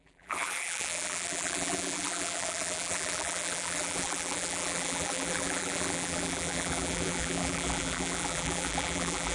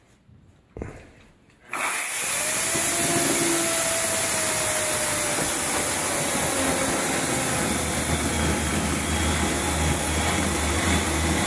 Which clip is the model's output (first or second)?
first